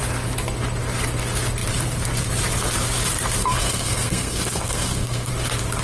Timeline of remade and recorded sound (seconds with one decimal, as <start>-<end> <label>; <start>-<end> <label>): 0.0-3.4 recorded; 3.4-5.3 remade; 5.3-5.8 recorded